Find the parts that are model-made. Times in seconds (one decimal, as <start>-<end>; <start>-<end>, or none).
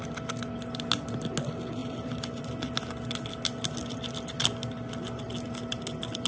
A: none